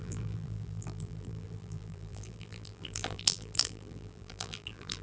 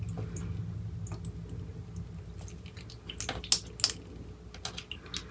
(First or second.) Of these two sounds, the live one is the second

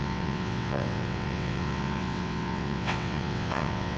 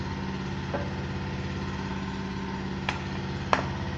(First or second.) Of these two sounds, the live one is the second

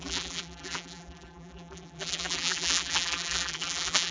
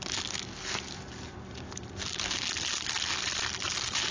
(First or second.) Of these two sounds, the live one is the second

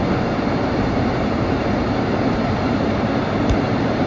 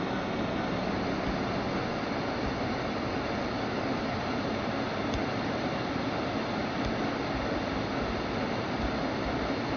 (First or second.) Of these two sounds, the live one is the second